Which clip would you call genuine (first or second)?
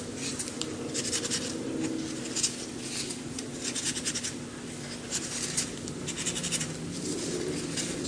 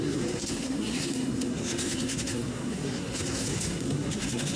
first